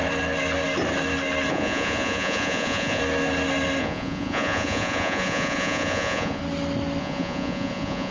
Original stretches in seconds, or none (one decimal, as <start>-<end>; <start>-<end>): 0.0-1.5; 3.0-3.8; 6.4-7.0